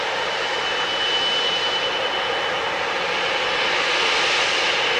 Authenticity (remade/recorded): recorded